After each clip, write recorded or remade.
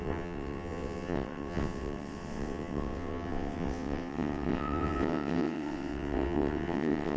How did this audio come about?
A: remade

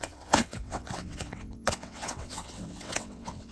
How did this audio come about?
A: remade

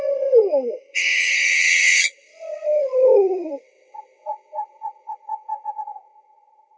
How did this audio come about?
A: remade